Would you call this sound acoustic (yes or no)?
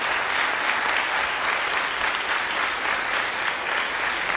yes